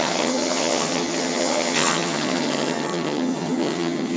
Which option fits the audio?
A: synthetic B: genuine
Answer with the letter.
A